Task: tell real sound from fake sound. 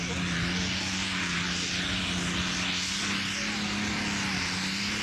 real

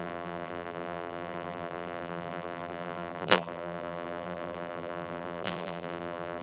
fake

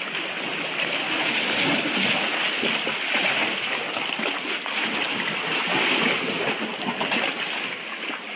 real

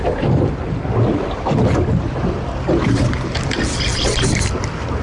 real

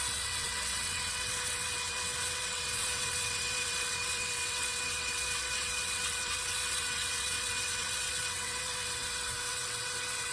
fake